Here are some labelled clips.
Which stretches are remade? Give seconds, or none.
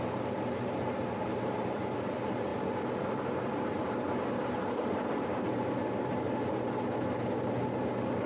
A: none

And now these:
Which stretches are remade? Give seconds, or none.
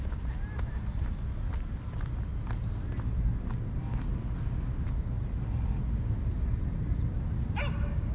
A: none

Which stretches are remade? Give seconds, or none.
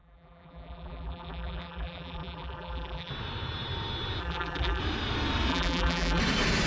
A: 0.0-3.1 (vocoder, BigVGAN v2); 4.2-4.8; 5.5-6.2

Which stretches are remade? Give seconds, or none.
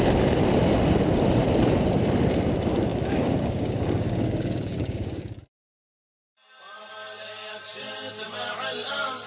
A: 2.9-5.4 (codec, DAC)